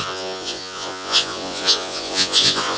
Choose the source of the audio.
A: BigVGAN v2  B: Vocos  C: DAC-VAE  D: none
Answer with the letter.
B